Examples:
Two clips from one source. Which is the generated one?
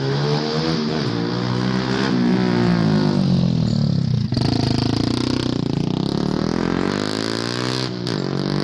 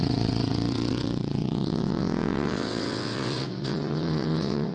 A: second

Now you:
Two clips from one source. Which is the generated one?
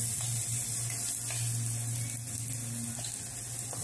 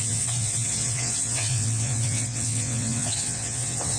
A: second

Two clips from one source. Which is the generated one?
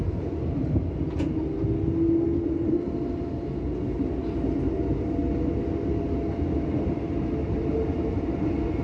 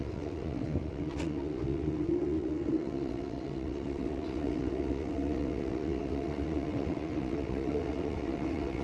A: second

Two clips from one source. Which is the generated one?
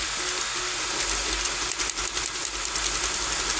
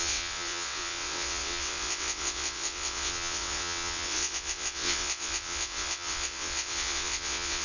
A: second